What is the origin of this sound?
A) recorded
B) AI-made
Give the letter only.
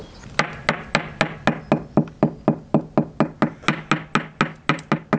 A